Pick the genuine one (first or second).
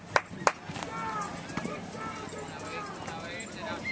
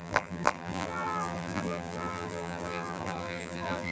first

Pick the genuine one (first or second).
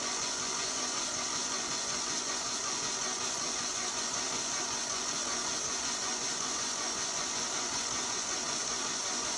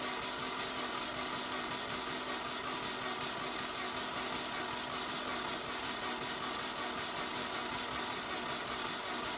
second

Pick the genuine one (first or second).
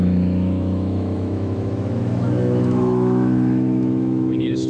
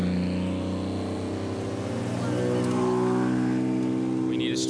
second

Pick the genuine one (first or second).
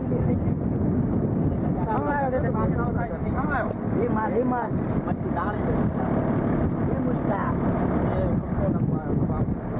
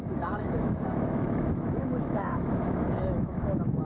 first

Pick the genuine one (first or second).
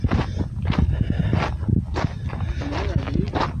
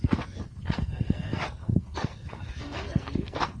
first